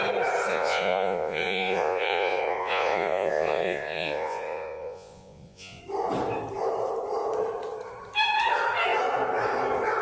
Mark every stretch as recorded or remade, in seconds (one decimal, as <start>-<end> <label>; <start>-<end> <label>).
0.0-0.5 recorded; 0.5-5.8 remade; 5.8-10.0 recorded